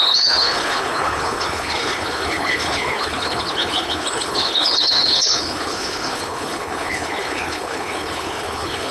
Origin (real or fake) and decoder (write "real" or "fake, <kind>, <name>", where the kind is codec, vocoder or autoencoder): fake, codec, HILCodec